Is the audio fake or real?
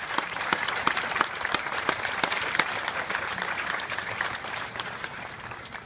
fake